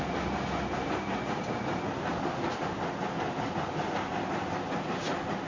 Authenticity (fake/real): real